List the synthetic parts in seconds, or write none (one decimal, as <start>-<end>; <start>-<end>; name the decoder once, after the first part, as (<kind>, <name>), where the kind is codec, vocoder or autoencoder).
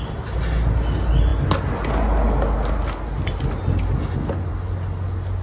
none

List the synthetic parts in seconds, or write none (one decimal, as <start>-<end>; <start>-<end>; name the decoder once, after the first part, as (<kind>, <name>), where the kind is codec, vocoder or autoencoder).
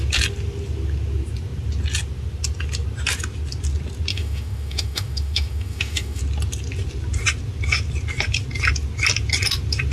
4.1-6.2 (autoencoder, DAC-VAE)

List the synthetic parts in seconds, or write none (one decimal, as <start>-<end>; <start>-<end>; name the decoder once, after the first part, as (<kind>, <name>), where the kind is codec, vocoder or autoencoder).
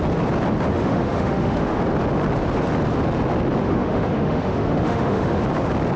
0.7-1.8 (autoencoder, DAC-VAE); 3.6-5.4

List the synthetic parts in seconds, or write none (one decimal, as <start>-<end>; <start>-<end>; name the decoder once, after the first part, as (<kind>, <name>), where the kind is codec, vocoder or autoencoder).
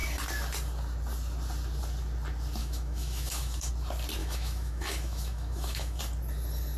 2.6-3.7 (autoencoder, DAC-VAE); 4.2-6.0